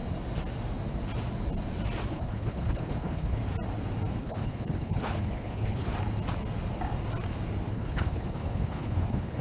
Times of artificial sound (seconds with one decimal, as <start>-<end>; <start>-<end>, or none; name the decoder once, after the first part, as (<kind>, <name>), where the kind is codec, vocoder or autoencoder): 2.1-3.4 (codec, HILCodec); 4.2-5.9; 7.7-9.4